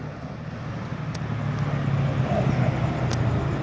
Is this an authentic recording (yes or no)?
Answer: yes